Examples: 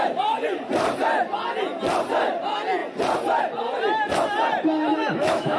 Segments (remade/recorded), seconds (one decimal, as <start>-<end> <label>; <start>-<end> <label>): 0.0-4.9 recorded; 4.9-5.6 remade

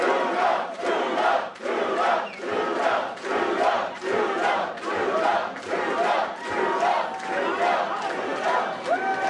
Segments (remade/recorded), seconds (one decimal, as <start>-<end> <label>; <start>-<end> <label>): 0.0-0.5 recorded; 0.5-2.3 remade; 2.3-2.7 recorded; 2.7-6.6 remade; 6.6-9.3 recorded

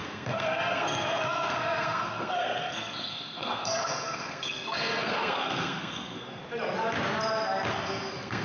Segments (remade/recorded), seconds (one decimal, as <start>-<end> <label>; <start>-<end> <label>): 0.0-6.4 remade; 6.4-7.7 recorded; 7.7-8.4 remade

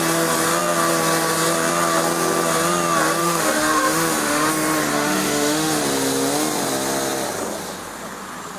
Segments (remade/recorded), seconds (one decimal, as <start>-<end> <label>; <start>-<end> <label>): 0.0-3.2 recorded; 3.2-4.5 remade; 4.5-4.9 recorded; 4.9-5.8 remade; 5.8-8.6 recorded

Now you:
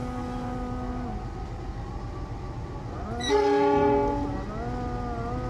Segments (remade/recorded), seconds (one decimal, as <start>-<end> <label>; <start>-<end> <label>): 0.0-3.3 recorded; 3.3-3.9 remade; 3.9-5.5 recorded

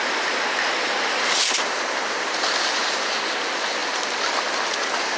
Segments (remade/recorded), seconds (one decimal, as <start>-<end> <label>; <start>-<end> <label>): 0.0-5.2 recorded

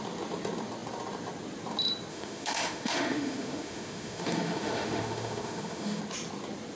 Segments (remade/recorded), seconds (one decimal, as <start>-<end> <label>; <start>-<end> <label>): 0.0-2.1 recorded; 2.1-6.0 remade; 6.0-6.8 recorded

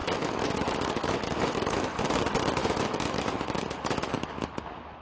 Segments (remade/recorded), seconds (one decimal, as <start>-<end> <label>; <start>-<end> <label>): 0.0-2.0 remade; 2.0-2.6 recorded; 2.6-4.1 remade; 4.1-5.0 recorded